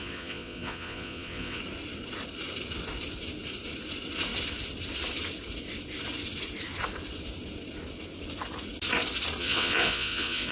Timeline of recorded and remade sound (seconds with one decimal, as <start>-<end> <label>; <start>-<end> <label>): 0.0-1.6 remade; 1.6-9.4 recorded; 9.4-10.5 remade